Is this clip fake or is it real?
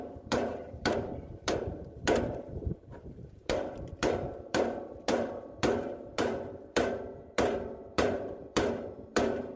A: fake